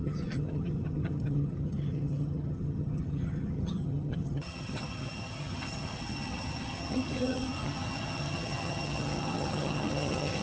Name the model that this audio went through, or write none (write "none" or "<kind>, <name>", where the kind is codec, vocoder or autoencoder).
vocoder, HiFi-GAN